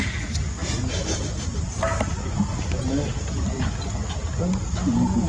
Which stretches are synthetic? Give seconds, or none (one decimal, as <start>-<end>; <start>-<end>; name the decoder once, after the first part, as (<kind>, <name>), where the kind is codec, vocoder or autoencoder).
none